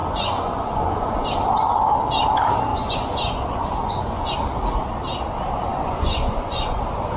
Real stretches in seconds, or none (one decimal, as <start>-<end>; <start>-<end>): 1.3-2.7; 4.3-5.7; 6.8-7.2